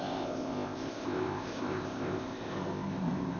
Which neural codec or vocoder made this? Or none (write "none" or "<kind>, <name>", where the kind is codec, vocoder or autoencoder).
codec, ZipCodec